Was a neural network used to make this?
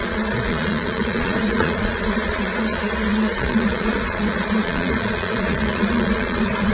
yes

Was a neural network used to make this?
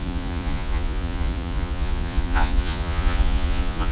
yes